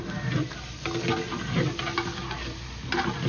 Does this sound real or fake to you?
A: real